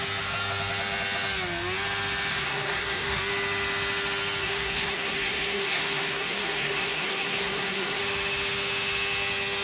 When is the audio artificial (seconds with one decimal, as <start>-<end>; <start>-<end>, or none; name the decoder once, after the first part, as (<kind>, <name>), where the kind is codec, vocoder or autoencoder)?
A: 2.3-3.2 (codec, SNAC); 4.4-8.0